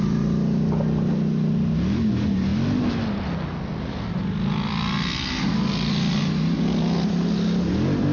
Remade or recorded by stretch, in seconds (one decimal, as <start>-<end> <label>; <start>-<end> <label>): 0.0-8.1 recorded